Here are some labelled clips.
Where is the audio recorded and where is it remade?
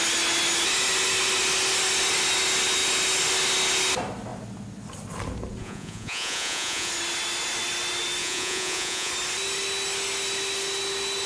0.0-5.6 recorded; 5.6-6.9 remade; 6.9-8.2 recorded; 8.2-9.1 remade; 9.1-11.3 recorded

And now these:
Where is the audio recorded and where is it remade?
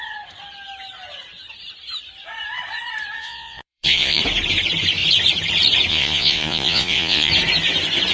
0.0-3.2 recorded; 3.2-4.2 remade; 4.2-5.9 recorded; 5.9-7.3 remade; 7.3-8.1 recorded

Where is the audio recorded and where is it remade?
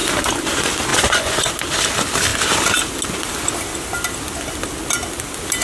0.0-0.9 recorded; 0.9-1.5 remade; 1.5-5.6 recorded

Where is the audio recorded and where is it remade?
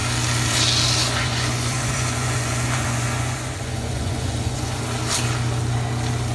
0.0-1.0 recorded; 1.0-4.8 remade; 4.8-6.3 recorded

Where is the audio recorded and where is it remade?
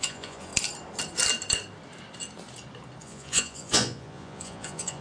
0.0-0.5 remade; 0.5-3.0 recorded; 3.0-5.0 remade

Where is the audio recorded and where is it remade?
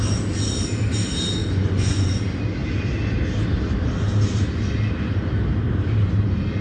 0.0-1.4 recorded; 1.4-2.2 remade; 2.2-6.6 recorded